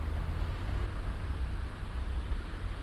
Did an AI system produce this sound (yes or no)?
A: no